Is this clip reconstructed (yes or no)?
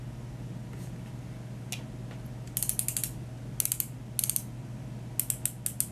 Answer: no